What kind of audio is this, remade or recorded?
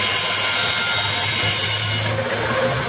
recorded